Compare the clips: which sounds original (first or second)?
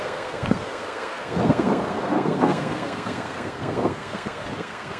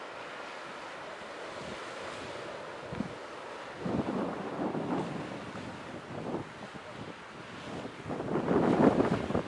second